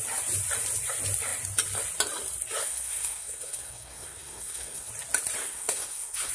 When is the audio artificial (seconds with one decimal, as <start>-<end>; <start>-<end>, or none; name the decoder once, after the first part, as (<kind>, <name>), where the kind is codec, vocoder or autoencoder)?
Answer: 2.6-4.9 (codec, SNAC); 5.4-6.3